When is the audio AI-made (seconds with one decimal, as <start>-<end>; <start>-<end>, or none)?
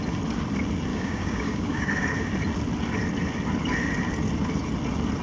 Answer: 0.9-1.9